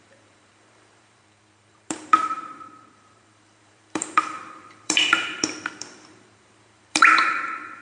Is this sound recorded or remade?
remade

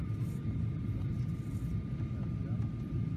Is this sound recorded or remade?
recorded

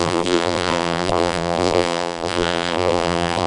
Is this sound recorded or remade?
remade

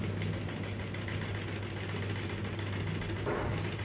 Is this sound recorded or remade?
recorded